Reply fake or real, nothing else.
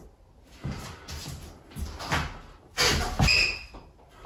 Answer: real